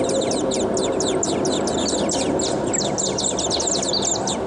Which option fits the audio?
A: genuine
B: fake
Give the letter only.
A